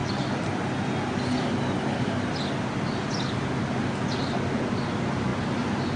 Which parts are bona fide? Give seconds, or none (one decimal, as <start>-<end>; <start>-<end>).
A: 0.0-6.0